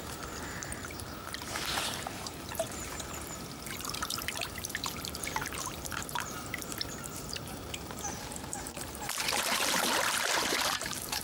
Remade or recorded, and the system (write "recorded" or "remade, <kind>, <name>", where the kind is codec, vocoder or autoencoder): remade, vocoder, BigVGAN v2